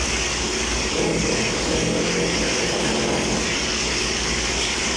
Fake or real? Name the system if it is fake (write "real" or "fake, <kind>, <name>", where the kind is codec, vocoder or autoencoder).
fake, codec, DAC